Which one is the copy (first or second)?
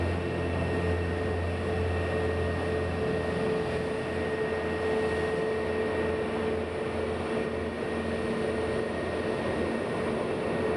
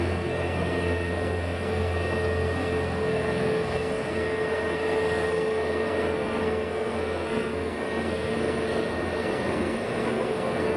second